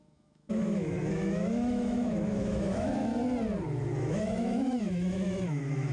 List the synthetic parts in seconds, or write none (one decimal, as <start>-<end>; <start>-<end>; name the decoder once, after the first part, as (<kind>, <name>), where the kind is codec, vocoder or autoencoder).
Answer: 0.0-3.1 (autoencoder, DAC-VAE); 4.0-5.9